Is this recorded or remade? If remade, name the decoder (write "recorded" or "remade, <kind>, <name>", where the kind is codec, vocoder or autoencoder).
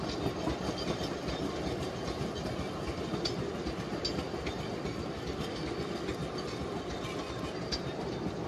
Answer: recorded